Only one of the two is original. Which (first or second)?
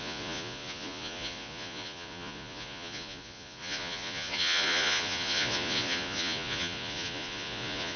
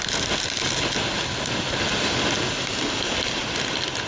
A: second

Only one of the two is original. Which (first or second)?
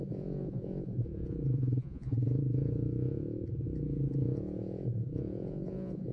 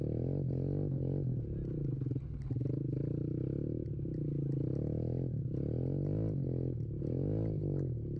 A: second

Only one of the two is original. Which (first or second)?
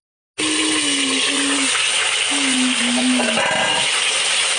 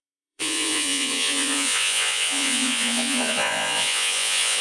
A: first